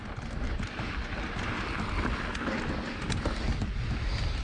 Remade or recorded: recorded